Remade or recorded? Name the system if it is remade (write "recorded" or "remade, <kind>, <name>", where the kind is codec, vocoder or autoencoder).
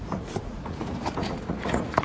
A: remade, vocoder, Vocos